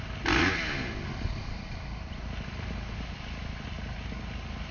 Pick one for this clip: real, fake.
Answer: real